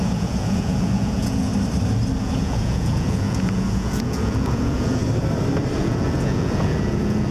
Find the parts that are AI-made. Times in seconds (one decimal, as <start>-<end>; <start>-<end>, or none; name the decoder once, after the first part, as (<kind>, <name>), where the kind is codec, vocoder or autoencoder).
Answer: 0.0-1.5 (vocoder, Vocos); 2.2-5.0; 5.8-7.3